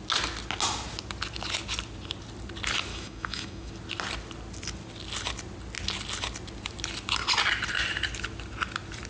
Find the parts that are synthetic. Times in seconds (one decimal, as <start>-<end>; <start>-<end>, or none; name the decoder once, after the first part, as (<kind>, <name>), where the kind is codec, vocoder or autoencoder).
2.9-3.7 (autoencoder, DAC-VAE)